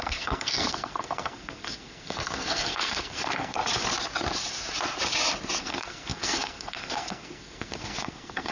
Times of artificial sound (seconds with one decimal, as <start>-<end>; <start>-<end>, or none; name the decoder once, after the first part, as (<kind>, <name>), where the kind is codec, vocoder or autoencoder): 0.0-3.6 (codec, SNAC); 5.6-8.5